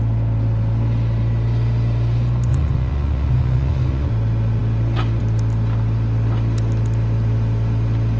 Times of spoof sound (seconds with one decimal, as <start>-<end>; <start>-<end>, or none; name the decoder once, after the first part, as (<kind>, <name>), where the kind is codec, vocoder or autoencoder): 2.5-4.1 (vocoder, Vocos)